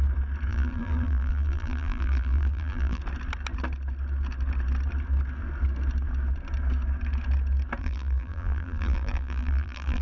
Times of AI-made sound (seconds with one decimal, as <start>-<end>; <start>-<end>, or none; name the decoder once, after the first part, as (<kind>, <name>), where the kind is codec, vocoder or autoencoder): 0.5-3.0 (vocoder, BigVGAN v2); 7.8-10.0

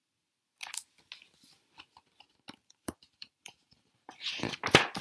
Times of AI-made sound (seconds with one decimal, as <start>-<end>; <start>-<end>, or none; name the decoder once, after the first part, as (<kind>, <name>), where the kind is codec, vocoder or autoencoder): 2.6-4.6 (vocoder, BigVGAN v2)

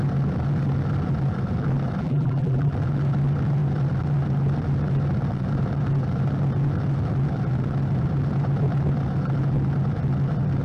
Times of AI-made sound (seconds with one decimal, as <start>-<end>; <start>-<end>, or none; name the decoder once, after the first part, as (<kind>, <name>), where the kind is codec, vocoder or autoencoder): 2.0-2.7 (vocoder, BigVGAN v2)